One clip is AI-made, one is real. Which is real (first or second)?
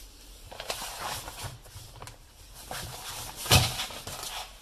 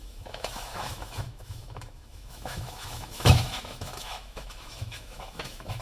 first